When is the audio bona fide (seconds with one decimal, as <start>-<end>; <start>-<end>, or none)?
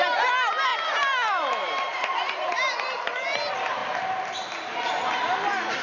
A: 0.0-0.7; 2.5-5.8